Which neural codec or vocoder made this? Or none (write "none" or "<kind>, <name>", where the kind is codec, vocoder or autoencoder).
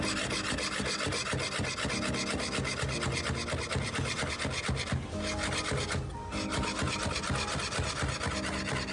none